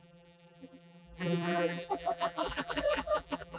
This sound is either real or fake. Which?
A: fake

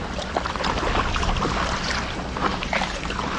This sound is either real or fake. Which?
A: fake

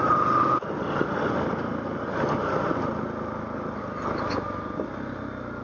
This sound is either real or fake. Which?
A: real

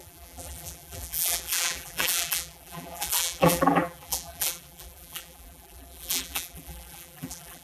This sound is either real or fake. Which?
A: fake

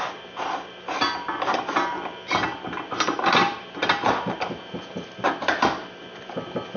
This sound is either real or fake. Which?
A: fake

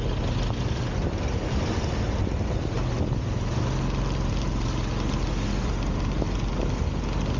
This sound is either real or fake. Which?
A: real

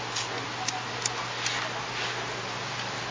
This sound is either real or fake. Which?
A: real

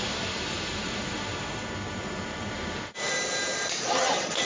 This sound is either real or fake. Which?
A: fake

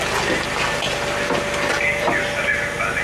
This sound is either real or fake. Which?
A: real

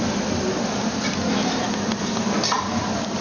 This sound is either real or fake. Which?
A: real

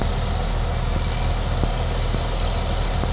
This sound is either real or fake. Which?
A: real